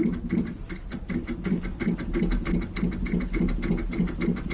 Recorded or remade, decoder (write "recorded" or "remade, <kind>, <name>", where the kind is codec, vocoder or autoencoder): recorded